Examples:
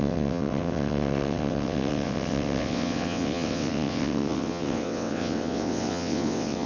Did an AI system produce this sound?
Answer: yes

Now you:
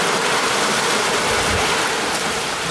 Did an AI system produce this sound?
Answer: no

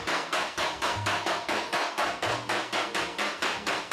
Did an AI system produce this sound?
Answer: yes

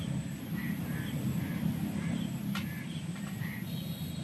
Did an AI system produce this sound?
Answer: no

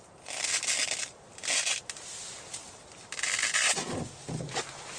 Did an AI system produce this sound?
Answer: no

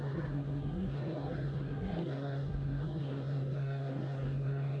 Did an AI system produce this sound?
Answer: yes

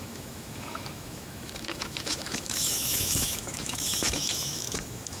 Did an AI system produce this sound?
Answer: yes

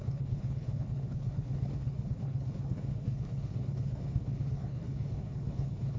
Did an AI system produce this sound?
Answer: yes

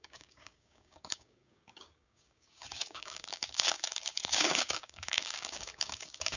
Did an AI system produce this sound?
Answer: yes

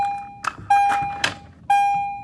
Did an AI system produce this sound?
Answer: no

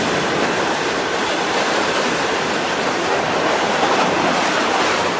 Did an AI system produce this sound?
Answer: yes